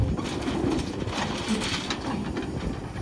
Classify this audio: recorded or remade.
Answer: recorded